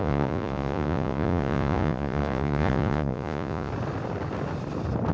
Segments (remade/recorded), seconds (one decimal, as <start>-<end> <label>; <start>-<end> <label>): 0.0-3.7 remade; 3.7-5.1 recorded